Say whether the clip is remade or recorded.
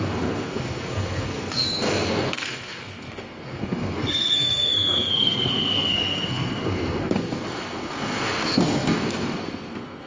remade